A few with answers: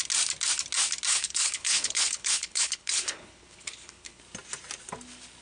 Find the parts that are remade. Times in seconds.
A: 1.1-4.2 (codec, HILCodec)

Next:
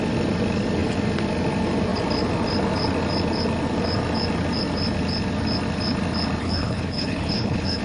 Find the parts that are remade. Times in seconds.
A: 6.4-7.8 (codec, HILCodec)

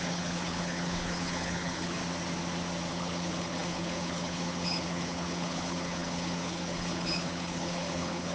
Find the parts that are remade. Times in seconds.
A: 0.0-2.0 (codec, HILCodec); 2.9-8.3